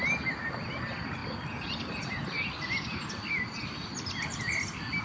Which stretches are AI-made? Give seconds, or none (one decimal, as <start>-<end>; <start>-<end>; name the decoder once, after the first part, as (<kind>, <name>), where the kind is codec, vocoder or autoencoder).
none